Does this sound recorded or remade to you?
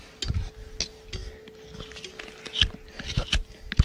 recorded